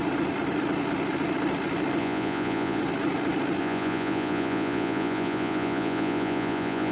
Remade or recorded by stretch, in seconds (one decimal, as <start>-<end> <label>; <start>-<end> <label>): 0.0-2.0 recorded; 2.0-2.8 remade; 2.8-3.6 recorded; 3.6-6.9 remade